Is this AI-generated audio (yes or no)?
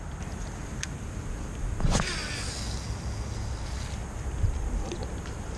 no